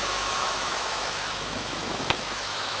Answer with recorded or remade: remade